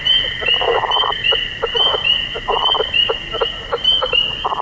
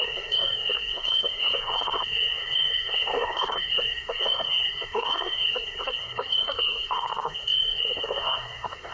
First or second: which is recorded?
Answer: first